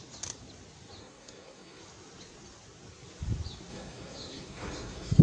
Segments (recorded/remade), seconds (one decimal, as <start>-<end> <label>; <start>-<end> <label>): 0.0-1.0 recorded; 1.0-1.8 remade; 1.8-3.7 recorded; 3.7-5.2 remade